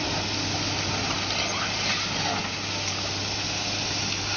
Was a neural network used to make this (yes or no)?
no